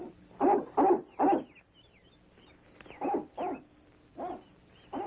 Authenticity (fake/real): real